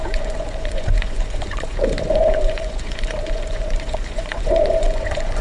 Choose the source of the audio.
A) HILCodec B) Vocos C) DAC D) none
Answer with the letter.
B